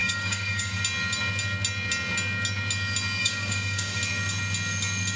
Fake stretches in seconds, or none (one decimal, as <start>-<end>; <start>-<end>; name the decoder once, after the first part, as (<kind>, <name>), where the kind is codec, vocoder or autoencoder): 0.0-0.8 (codec, DAC); 3.2-4.0